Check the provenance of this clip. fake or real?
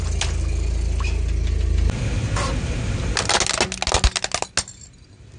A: real